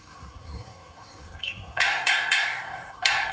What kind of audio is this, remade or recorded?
remade